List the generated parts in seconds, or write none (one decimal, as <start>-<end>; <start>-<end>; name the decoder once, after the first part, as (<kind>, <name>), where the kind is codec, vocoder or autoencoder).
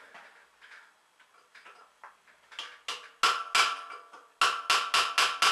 none